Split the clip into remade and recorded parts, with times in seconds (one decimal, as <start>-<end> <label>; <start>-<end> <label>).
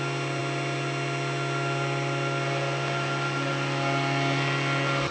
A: 0.0-5.1 recorded